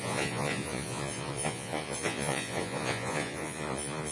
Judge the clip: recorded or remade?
remade